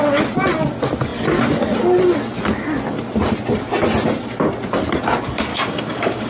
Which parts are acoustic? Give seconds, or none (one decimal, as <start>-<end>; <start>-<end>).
0.0-5.5